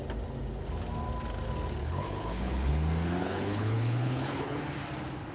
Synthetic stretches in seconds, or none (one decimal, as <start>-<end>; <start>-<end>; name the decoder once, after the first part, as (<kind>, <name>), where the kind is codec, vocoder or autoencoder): 1.8-2.7 (codec, HILCodec); 3.2-4.6